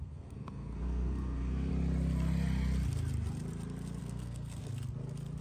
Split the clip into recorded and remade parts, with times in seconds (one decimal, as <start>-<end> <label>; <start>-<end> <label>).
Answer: 0.0-1.7 remade; 1.7-4.0 recorded; 4.0-4.6 remade; 4.6-5.4 recorded